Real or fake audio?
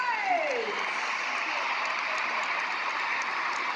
real